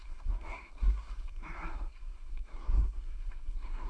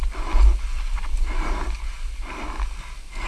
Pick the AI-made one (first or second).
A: first